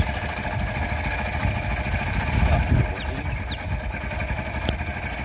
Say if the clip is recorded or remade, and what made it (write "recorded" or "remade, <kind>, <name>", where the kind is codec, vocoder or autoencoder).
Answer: recorded